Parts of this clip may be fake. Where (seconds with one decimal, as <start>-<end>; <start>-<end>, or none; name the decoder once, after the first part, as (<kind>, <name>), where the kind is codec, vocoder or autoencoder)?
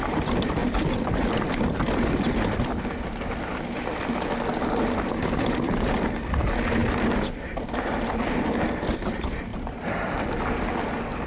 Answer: 0.0-6.8 (vocoder, BigVGAN v2); 9.1-11.3